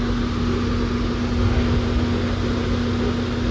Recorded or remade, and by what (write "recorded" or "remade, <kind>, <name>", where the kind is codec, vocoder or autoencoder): recorded